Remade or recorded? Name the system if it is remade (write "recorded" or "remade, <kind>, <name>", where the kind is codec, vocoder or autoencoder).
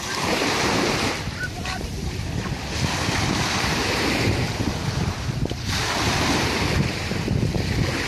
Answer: remade, vocoder, BigVGAN v2